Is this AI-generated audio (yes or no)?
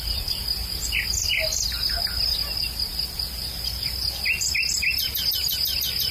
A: no